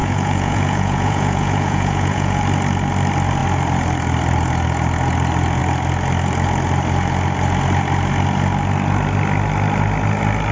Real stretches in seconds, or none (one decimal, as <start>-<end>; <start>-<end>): 2.4-10.5